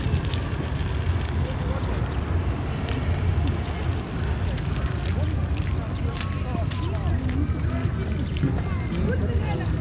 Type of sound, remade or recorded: recorded